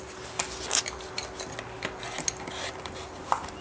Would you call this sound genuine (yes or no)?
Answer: yes